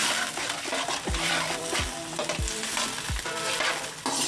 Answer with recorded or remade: remade